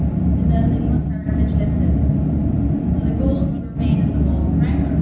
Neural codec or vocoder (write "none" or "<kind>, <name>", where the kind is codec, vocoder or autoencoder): none